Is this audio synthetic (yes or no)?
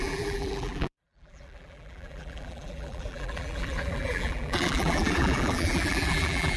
yes